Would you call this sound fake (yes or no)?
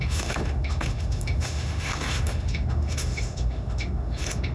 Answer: yes